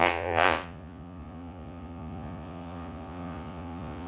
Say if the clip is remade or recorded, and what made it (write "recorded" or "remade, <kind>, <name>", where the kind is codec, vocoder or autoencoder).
remade, vocoder, Vocos